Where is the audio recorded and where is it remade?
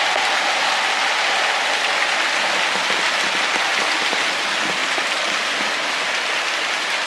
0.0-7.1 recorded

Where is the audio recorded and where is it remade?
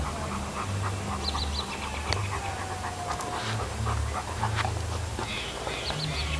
0.0-6.4 recorded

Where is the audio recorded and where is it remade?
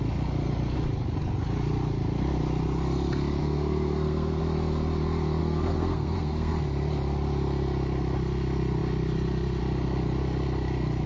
0.0-3.4 recorded; 3.4-4.4 remade; 4.4-5.4 recorded; 5.4-6.5 remade; 6.5-11.1 recorded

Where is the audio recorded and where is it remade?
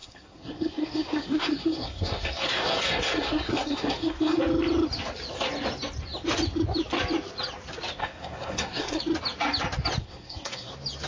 0.0-4.4 remade; 4.4-8.0 recorded; 8.0-9.0 remade; 9.0-10.0 recorded; 10.0-10.7 remade; 10.7-11.1 recorded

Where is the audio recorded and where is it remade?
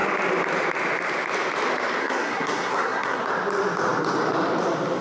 0.0-2.0 recorded; 2.0-3.2 remade; 3.2-5.0 recorded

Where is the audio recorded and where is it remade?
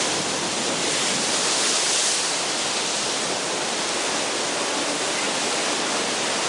0.0-6.5 recorded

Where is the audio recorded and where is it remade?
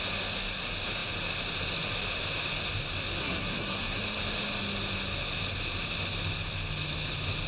0.0-3.2 recorded; 3.2-4.0 remade; 4.0-7.5 recorded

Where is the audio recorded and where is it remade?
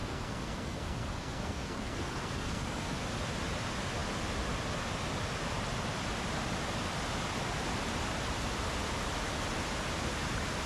0.0-3.0 remade; 3.0-10.7 recorded